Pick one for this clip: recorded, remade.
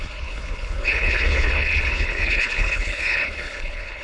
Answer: remade